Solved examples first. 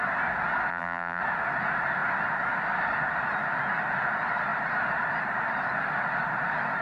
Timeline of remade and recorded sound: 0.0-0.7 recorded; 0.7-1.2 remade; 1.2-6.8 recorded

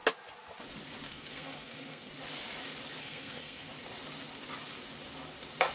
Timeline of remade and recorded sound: 0.0-1.1 recorded; 1.1-2.1 remade; 2.1-3.0 recorded; 3.0-3.7 remade; 3.7-5.7 recorded

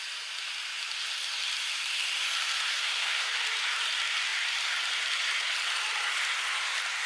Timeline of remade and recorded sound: 0.0-2.7 recorded; 2.7-3.3 remade; 3.3-7.1 recorded

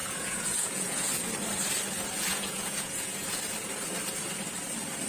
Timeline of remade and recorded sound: 0.0-1.1 remade; 1.1-2.3 recorded; 2.3-3.4 remade; 3.4-5.1 recorded

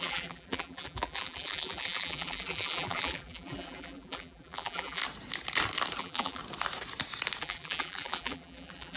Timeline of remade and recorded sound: 0.0-5.0 remade; 5.0-6.0 recorded; 6.0-6.4 remade; 6.4-7.4 recorded; 7.4-9.0 remade

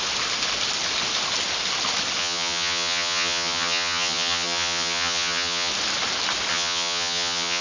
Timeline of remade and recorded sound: 0.0-2.2 recorded; 2.2-5.7 remade; 5.7-6.5 recorded; 6.5-7.6 remade

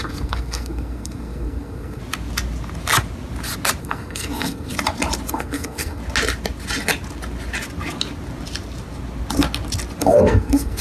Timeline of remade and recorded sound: 0.0-2.0 remade; 2.0-3.8 recorded; 3.8-4.7 remade; 4.7-5.3 recorded; 5.3-6.0 remade; 6.0-10.0 recorded; 10.0-10.8 remade

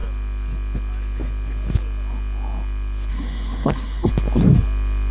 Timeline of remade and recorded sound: 0.0-3.1 recorded; 3.1-4.1 remade; 4.1-5.1 recorded